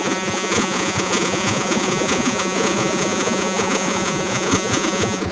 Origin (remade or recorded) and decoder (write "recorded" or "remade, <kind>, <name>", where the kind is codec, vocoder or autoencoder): remade, vocoder, Vocos